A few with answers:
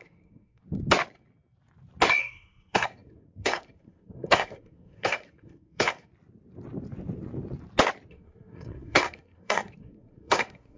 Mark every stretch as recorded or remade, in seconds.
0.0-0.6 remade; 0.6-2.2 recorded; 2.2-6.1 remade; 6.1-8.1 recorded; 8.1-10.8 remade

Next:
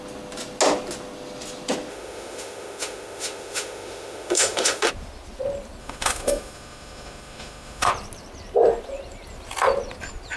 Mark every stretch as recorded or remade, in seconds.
0.0-1.9 recorded; 1.9-4.9 remade; 4.9-5.8 recorded; 5.8-7.9 remade; 7.9-10.4 recorded